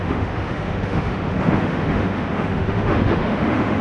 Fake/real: fake